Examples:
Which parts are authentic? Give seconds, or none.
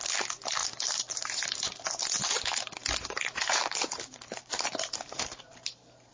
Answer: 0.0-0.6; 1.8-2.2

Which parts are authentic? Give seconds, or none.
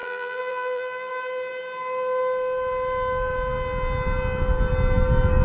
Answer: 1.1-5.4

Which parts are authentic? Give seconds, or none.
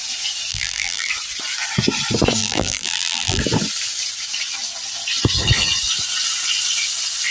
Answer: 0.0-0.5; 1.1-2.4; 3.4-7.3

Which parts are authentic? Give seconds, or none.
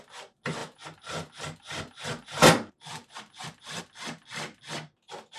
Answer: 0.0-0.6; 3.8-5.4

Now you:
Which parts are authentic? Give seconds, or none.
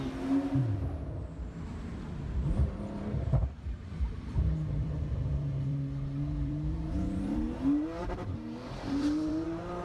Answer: 0.6-2.2